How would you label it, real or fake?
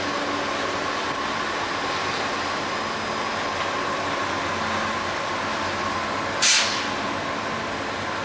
real